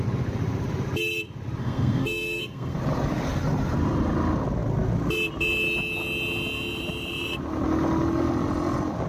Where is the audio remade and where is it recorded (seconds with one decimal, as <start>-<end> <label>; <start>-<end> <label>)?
0.0-1.6 recorded; 1.6-2.8 remade; 2.8-9.1 recorded